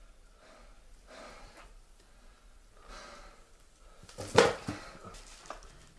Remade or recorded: recorded